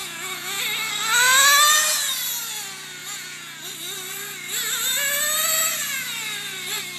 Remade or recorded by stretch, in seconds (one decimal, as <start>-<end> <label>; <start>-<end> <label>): 0.0-0.6 remade; 0.6-3.0 recorded; 3.0-3.6 remade; 3.6-7.0 recorded